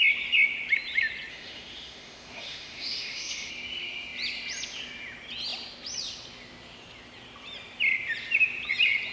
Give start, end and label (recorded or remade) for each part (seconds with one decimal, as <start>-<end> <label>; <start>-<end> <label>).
0.0-1.3 recorded; 1.3-3.5 remade; 3.5-9.1 recorded

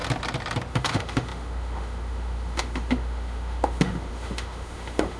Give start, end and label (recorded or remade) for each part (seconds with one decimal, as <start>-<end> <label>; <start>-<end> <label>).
0.0-0.7 recorded; 0.7-5.2 remade

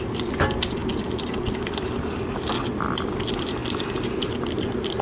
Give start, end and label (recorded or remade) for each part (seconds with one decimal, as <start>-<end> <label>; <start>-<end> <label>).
0.0-5.0 recorded

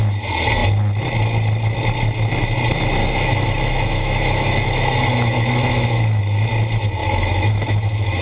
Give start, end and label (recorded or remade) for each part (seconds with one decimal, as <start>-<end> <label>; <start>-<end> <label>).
0.0-3.0 recorded; 3.0-6.2 remade; 6.2-7.0 recorded; 7.0-8.2 remade

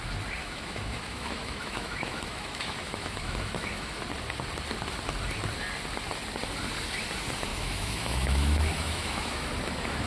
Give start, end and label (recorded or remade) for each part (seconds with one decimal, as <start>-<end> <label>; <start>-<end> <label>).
0.0-0.4 recorded; 0.4-4.0 remade; 4.0-7.5 recorded; 7.5-9.5 remade; 9.5-10.1 recorded

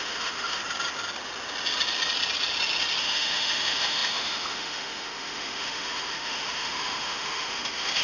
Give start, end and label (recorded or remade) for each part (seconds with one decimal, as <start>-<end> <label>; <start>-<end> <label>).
0.0-0.6 remade; 0.6-3.0 recorded; 3.0-8.0 remade

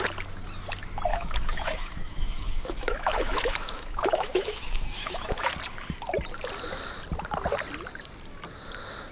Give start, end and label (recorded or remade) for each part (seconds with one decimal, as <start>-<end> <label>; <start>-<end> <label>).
0.0-1.1 recorded; 1.1-5.5 remade; 5.5-9.1 recorded

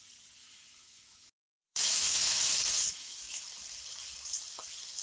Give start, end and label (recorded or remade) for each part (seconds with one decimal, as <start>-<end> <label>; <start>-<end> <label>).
0.0-0.4 recorded; 0.4-3.4 remade; 3.4-5.0 recorded